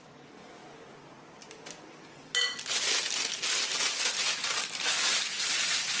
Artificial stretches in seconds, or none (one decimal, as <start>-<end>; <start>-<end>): 0.0-0.6; 4.2-6.0